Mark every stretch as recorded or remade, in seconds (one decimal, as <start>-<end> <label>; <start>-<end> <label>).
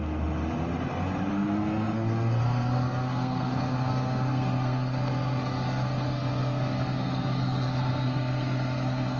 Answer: 0.0-1.3 recorded; 1.3-9.2 remade